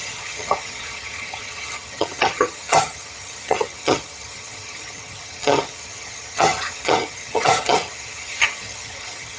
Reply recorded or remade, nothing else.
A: remade